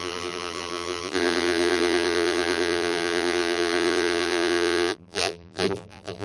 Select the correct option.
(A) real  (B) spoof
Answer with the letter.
B